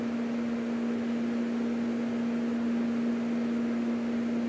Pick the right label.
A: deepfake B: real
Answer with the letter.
B